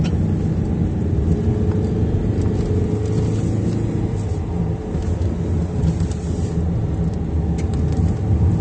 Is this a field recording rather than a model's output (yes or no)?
yes